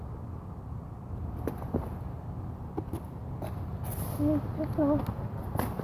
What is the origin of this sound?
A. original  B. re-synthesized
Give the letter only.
A